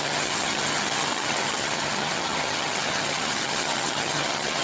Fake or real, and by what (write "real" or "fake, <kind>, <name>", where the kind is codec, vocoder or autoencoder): fake, vocoder, HiFi-GAN